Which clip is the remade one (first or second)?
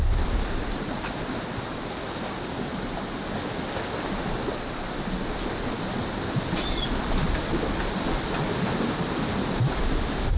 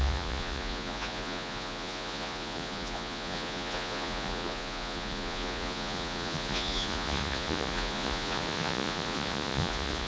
second